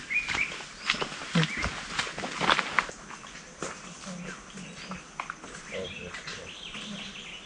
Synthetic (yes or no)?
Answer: no